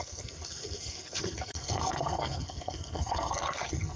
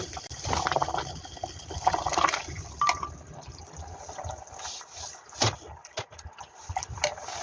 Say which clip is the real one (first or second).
second